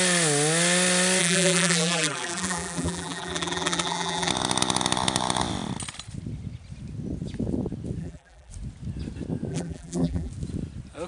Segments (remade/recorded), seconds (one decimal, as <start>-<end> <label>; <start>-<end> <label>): 0.0-1.2 recorded; 1.2-4.3 remade; 4.3-8.0 recorded; 8.0-8.5 remade; 8.5-9.5 recorded; 9.5-10.3 remade; 10.3-11.1 recorded